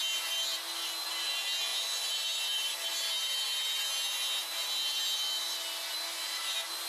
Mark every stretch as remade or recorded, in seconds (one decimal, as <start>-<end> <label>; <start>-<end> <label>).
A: 0.0-6.9 recorded